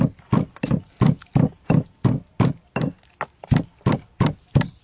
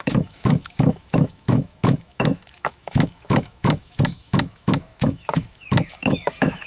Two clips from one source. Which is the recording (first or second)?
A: first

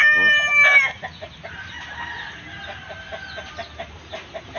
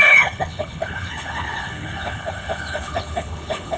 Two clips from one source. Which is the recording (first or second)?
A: first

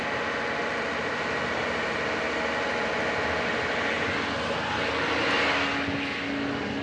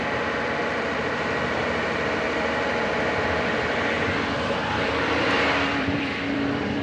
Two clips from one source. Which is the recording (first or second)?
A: first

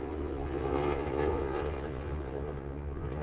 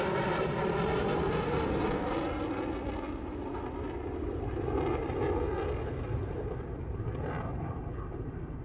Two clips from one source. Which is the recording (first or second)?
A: second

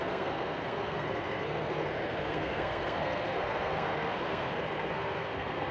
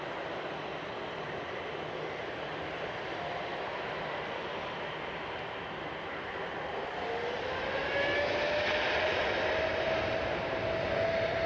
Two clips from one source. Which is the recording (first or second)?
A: second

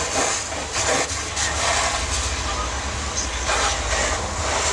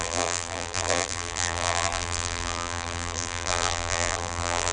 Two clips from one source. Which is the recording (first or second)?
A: first